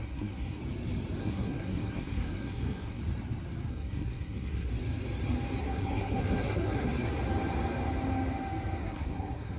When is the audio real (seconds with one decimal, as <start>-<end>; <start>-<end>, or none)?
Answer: 0.6-1.2; 3.0-3.7; 4.7-5.6; 7.1-8.8